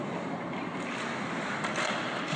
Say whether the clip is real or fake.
real